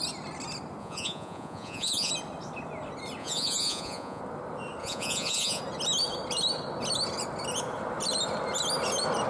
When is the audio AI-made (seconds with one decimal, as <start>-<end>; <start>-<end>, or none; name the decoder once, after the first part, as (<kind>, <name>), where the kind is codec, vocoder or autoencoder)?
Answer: 0.8-2.1 (vocoder, Vocos); 3.2-4.2; 4.8-5.6